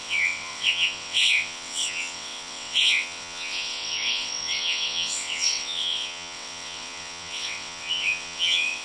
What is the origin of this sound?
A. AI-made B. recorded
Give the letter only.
A